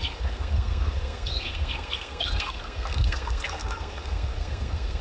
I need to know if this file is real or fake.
fake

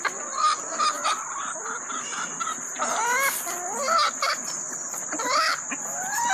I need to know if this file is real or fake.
real